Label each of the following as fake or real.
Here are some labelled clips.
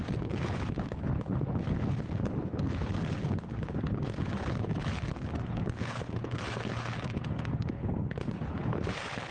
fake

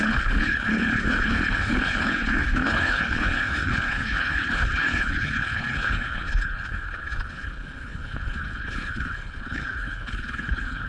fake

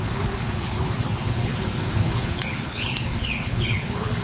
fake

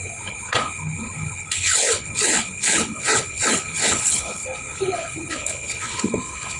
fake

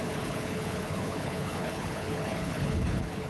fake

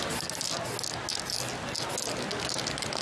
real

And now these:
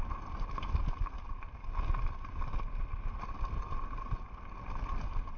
real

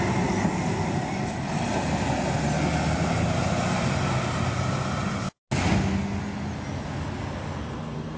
real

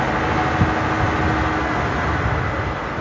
real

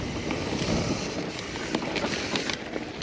real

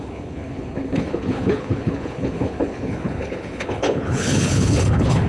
fake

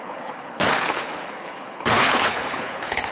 fake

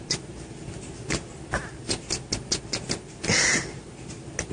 real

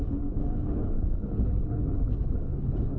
fake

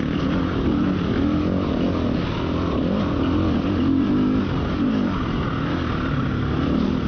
real